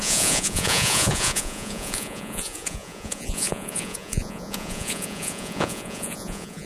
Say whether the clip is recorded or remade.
remade